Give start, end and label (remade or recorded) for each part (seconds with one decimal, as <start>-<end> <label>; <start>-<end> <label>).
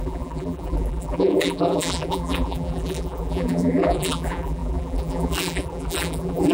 0.0-6.5 remade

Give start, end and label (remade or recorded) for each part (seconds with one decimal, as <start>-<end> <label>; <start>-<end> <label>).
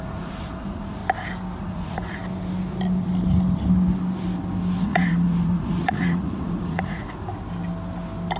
0.0-1.0 remade; 1.0-1.6 recorded; 1.6-2.2 remade; 2.2-4.8 recorded; 4.8-7.3 remade; 7.3-8.4 recorded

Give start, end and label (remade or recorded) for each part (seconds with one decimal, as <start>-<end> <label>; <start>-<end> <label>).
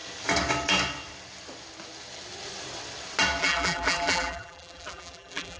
0.0-3.4 recorded; 3.4-5.6 remade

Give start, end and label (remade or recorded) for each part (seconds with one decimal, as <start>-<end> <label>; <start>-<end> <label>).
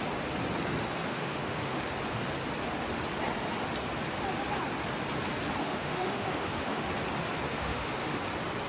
0.0-1.1 recorded; 1.1-1.8 remade; 1.8-5.6 recorded; 5.6-6.9 remade; 6.9-7.5 recorded; 7.5-8.2 remade; 8.2-8.7 recorded